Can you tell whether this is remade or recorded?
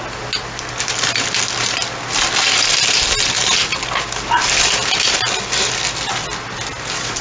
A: recorded